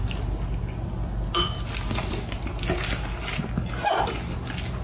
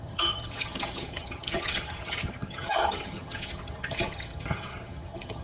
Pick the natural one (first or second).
first